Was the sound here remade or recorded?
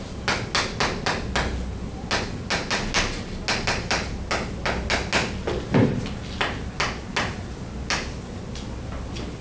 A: recorded